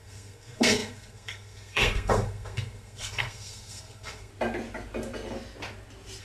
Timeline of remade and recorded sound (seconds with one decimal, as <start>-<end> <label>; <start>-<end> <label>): 0.0-4.3 remade; 4.3-6.2 recorded

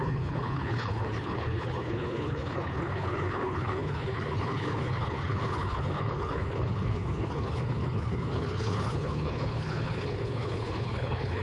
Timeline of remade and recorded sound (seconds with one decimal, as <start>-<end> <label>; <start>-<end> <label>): 0.0-11.4 remade

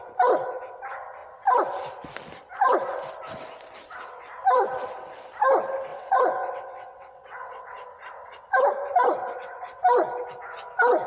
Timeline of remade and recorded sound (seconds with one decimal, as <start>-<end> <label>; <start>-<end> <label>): 0.0-5.9 recorded; 5.9-7.7 remade; 7.7-9.2 recorded; 9.2-9.8 remade; 9.8-11.1 recorded